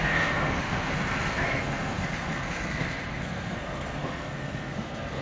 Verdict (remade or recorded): remade